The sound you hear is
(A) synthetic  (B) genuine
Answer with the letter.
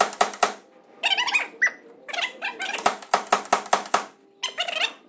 B